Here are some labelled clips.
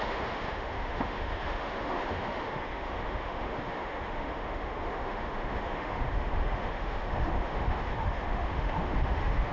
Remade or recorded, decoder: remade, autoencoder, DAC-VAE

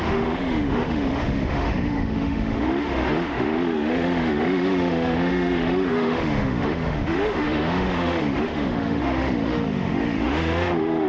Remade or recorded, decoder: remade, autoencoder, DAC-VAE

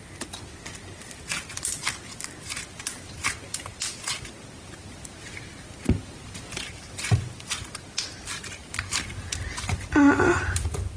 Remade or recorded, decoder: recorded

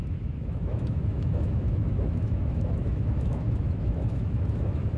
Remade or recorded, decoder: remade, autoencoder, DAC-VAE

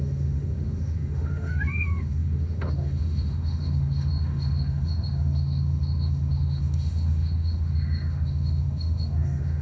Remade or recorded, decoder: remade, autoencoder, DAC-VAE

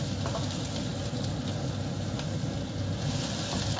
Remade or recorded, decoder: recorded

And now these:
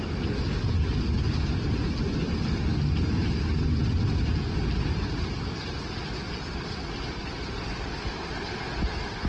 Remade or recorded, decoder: recorded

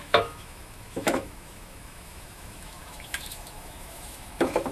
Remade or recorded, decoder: remade, autoencoder, DAC-VAE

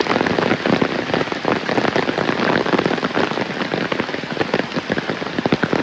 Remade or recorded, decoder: recorded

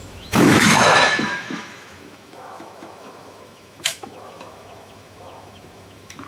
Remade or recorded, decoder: remade, autoencoder, DAC-VAE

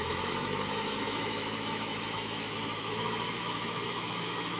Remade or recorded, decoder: remade, autoencoder, DAC-VAE